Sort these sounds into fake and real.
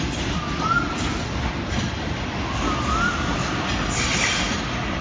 real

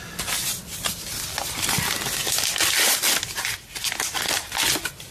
real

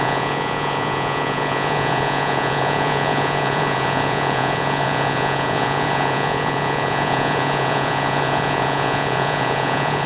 fake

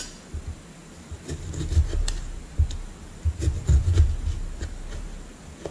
real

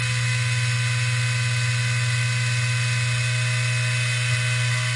real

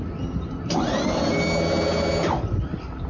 real